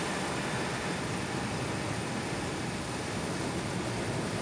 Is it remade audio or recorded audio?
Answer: recorded